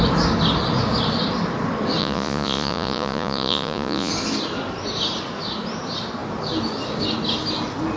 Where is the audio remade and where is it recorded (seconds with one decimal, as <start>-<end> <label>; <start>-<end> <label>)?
0.0-2.0 recorded; 2.0-4.1 remade; 4.1-8.0 recorded